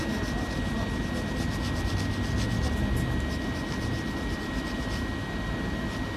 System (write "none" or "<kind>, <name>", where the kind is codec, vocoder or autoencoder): none